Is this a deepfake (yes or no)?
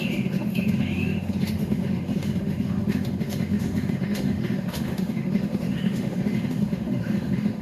yes